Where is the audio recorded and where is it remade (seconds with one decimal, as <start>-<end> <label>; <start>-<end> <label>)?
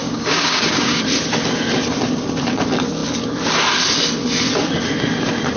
0.0-1.0 remade; 1.0-5.6 recorded